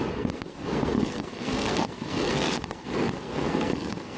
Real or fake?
fake